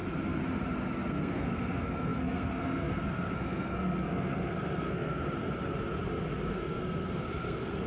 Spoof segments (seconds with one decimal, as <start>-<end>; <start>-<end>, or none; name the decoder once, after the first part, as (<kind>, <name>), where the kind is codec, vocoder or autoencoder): 1.1-5.2 (codec, SNAC); 6.5-7.9